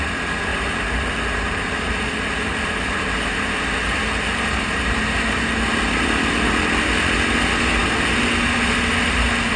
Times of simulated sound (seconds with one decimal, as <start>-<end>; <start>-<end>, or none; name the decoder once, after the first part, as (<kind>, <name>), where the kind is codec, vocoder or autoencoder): 0.5-5.5 (vocoder, BigVGAN v2)